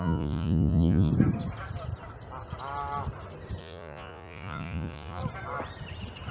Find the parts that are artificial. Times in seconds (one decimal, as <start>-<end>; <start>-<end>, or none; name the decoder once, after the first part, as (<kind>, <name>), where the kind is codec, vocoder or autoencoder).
0.0-1.1 (vocoder, Vocos); 3.6-5.2